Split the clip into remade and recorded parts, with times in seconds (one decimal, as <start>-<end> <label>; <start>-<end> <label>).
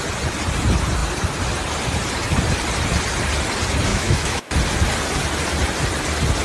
0.0-3.9 recorded; 3.9-4.5 remade; 4.5-6.4 recorded